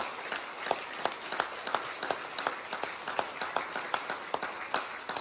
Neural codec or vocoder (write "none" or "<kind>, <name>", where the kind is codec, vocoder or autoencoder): none